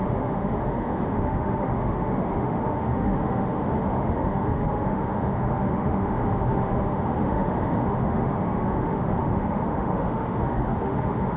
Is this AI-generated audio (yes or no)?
yes